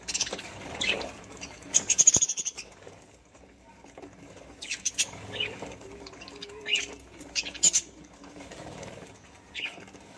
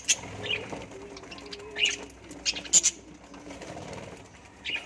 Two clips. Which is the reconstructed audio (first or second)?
first